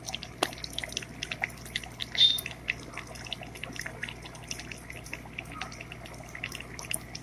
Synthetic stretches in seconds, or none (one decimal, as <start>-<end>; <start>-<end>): none